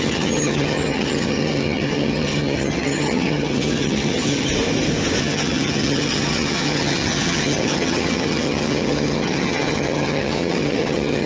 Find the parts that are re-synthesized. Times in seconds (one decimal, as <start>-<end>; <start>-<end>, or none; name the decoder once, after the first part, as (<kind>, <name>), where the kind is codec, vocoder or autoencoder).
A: 0.0-4.5 (vocoder, HiFi-GAN); 5.2-11.3